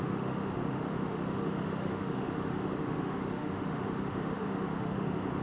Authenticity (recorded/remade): remade